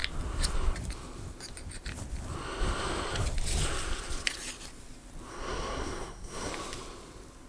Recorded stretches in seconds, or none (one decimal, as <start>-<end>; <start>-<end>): 0.0-5.3; 6.5-7.5